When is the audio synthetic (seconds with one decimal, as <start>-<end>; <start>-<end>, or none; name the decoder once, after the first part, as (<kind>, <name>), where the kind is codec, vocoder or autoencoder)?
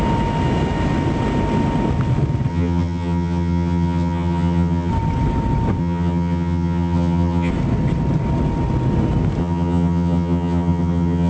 2.5-4.9 (vocoder, HiFi-GAN); 5.8-7.5; 9.4-11.3